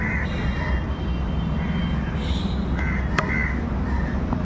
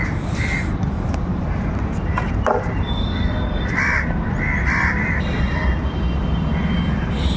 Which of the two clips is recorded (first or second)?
first